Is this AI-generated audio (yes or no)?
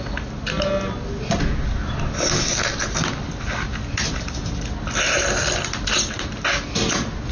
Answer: no